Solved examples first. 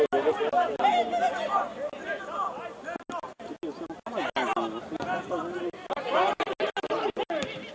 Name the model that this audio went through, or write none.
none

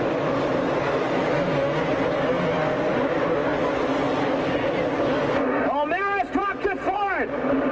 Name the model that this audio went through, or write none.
none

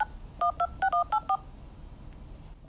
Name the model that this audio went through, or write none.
none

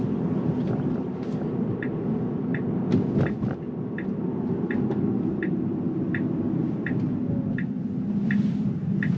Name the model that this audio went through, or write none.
none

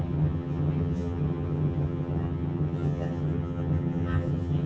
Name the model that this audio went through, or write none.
vocoder, HiFi-GAN